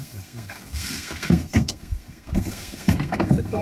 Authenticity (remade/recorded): remade